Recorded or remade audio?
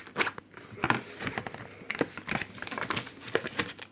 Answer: recorded